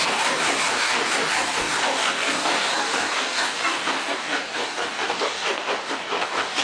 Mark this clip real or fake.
fake